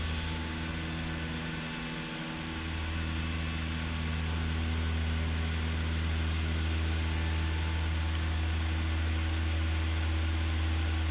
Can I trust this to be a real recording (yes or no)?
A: yes